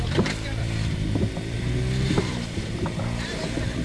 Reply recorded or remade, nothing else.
remade